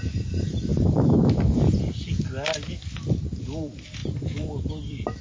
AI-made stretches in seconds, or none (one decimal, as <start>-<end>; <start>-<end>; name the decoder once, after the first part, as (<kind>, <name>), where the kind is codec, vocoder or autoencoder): 0.0-0.7 (vocoder, BigVGAN v2); 3.1-4.0; 4.7-5.2